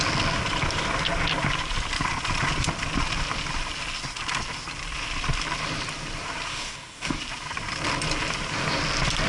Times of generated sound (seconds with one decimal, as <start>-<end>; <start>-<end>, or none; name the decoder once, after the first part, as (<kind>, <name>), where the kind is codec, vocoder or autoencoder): 6.5-7.2 (codec, DAC)